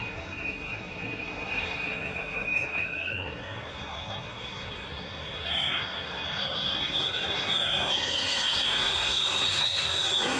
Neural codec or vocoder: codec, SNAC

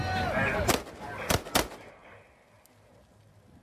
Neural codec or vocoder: none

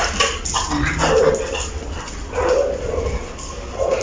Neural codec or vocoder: none